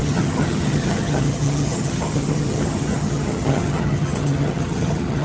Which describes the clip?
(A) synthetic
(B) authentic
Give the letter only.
A